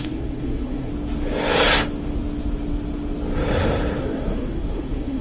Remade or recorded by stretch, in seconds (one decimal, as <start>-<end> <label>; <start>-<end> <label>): 0.0-0.9 remade; 0.9-4.0 recorded; 4.0-5.2 remade